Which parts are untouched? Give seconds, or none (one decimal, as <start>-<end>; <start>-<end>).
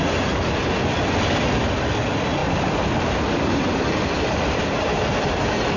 0.0-2.4